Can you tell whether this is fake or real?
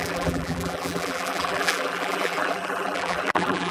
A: fake